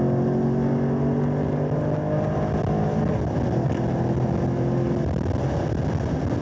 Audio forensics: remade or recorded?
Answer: recorded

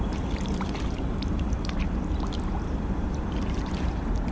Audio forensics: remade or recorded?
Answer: remade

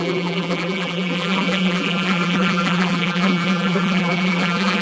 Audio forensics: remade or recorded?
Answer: remade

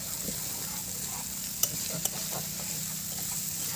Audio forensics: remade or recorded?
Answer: recorded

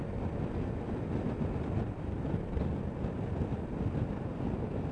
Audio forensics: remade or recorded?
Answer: recorded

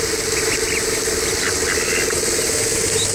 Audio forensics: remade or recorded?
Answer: recorded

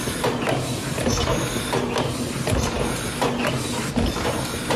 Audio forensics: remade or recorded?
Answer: recorded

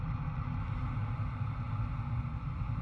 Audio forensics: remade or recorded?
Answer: recorded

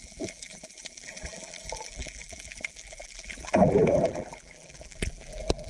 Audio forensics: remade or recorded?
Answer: remade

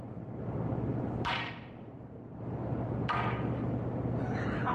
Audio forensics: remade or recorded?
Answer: recorded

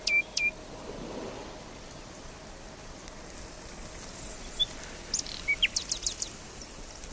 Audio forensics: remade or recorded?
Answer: recorded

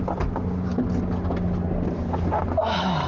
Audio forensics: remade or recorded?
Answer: recorded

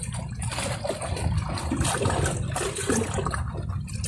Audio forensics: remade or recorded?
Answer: recorded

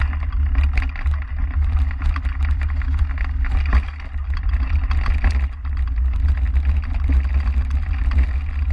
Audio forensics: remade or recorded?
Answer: recorded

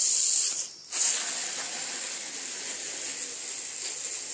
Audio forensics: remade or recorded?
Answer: recorded